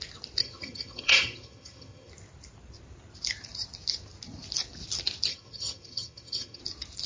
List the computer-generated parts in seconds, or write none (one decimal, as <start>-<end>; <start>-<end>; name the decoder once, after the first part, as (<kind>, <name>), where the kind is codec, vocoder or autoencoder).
0.4-2.1 (vocoder, HiFi-GAN); 5.3-6.6

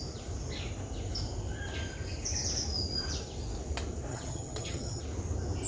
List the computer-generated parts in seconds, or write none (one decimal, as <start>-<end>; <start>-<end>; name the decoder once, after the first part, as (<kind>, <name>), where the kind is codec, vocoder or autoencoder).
4.1-5.0 (vocoder, HiFi-GAN)

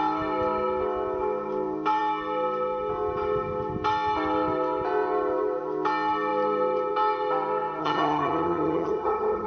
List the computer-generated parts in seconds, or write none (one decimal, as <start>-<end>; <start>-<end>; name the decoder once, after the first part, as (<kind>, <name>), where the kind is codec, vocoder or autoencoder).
7.8-9.5 (vocoder, HiFi-GAN)

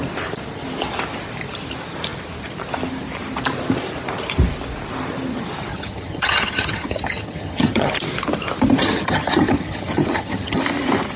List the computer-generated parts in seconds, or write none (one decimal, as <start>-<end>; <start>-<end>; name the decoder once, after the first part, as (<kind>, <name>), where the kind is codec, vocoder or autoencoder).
5.7-7.9 (vocoder, HiFi-GAN); 8.8-10.6